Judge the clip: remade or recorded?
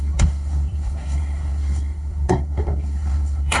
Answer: remade